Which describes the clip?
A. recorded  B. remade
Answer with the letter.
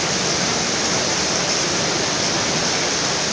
A